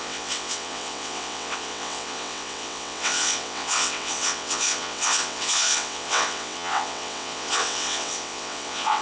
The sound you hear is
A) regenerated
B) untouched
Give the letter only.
A